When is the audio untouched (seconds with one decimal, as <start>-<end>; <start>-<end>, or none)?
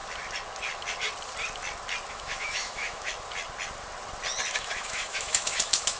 0.0-2.1; 3.1-4.5